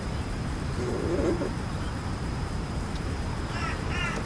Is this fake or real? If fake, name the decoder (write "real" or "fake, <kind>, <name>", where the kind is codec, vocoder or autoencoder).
fake, vocoder, BigVGAN v2